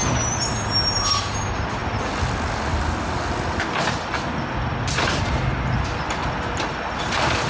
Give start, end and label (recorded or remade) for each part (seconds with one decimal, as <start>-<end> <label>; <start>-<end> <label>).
0.0-7.5 recorded